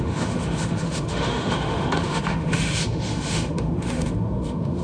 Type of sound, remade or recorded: remade